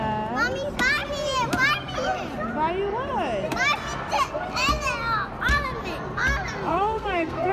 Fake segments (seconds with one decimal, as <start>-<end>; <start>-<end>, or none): 6.7-7.5